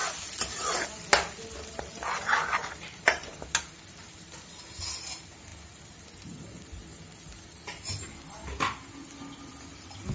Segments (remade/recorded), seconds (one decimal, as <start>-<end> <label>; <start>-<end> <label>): 0.0-10.1 recorded